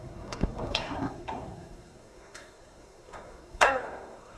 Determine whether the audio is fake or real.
fake